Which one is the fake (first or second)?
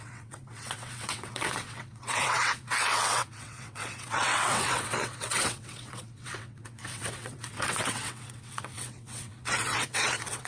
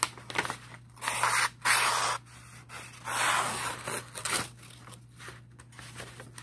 first